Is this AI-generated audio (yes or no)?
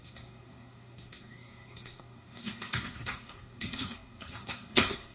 yes